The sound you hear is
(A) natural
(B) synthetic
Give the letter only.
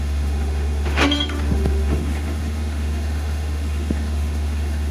B